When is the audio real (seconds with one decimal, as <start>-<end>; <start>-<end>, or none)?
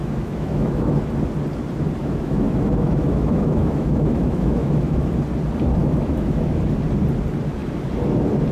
1.1-2.0; 5.1-5.8; 6.6-8.5